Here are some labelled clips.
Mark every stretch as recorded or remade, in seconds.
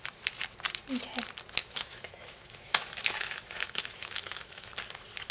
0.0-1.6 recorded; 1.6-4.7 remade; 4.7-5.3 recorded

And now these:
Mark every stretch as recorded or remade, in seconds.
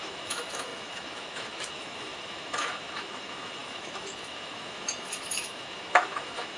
0.0-6.6 remade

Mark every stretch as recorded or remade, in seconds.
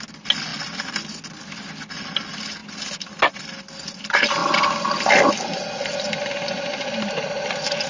0.0-7.9 recorded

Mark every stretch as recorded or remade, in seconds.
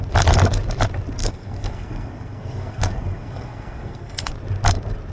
0.0-1.2 recorded; 1.2-4.3 remade; 4.3-5.1 recorded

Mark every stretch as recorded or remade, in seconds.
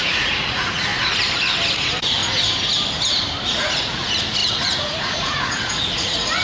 0.0-0.9 remade; 0.9-1.7 recorded; 1.7-2.2 remade; 2.2-3.6 recorded; 3.6-6.4 remade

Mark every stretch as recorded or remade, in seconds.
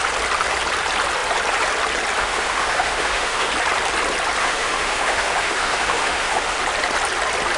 0.0-2.2 recorded; 2.2-3.5 remade; 3.5-4.4 recorded; 4.4-6.6 remade; 6.6-7.6 recorded